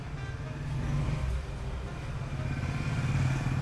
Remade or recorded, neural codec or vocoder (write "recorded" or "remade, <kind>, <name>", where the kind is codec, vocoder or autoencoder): recorded